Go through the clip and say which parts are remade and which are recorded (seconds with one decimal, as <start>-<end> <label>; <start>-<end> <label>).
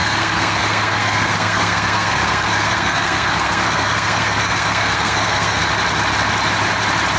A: 0.0-5.6 remade; 5.6-7.2 recorded